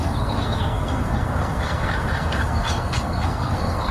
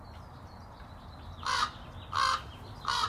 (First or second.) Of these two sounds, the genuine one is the second